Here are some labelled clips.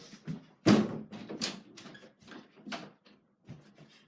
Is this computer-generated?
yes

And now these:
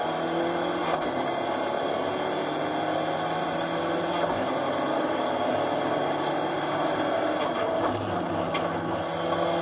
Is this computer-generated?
no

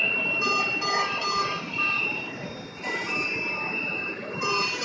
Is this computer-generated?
yes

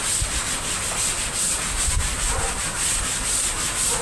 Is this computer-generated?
no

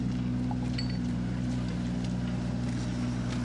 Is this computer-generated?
no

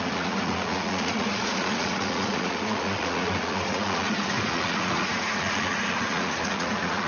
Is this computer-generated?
yes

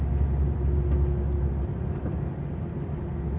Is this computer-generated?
no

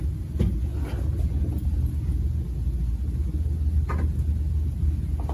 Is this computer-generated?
no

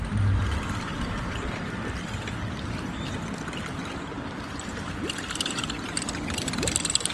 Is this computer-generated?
no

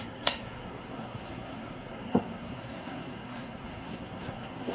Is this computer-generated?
yes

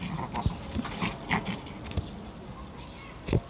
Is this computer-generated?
no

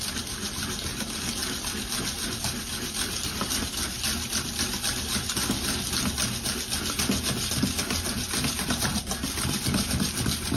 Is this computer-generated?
no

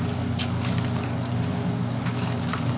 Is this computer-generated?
yes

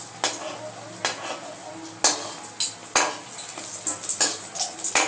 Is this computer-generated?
no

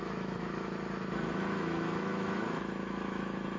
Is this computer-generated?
yes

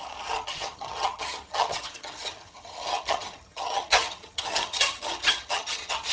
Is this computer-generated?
yes